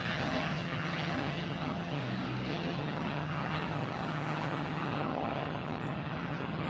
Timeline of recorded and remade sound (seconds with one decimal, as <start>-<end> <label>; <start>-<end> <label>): 0.0-2.0 remade; 2.0-2.5 recorded; 2.5-6.7 remade